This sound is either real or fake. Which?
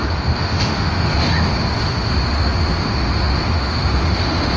fake